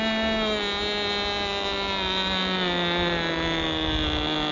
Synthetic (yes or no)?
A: no